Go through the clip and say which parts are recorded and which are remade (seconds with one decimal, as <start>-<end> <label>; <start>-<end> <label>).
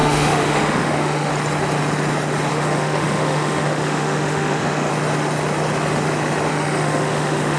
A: 0.0-1.3 remade; 1.3-2.5 recorded; 2.5-4.9 remade; 4.9-6.5 recorded; 6.5-7.6 remade